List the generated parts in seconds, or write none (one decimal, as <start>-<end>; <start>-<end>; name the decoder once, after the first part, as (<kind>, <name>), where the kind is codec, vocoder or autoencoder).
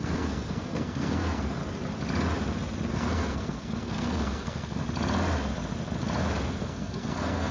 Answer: 0.0-1.6 (codec, SNAC); 2.9-4.8; 6.5-7.5